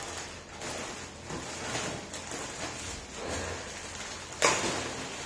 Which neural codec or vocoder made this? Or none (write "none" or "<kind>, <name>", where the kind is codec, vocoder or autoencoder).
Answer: none